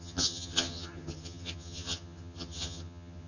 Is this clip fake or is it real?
fake